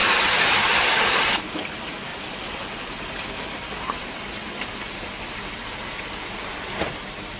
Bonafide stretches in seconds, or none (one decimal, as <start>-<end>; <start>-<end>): 0.0-7.4